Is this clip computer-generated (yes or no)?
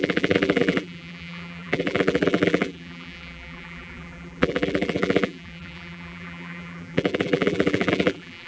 yes